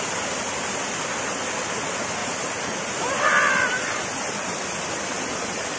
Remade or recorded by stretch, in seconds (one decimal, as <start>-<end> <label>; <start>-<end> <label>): 0.0-5.8 recorded